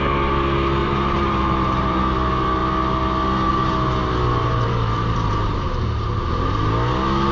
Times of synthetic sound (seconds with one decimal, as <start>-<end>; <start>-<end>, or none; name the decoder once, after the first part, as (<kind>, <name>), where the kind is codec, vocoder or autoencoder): 0.8-2.0 (vocoder, BigVGAN v2); 4.4-6.7